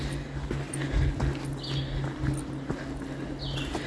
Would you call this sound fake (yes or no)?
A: no